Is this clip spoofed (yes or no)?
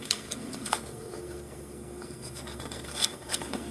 yes